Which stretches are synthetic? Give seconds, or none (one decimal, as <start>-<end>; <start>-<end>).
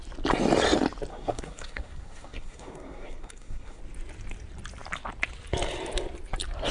1.1-3.8